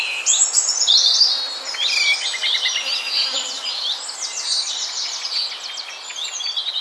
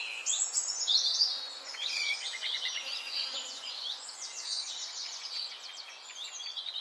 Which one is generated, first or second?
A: second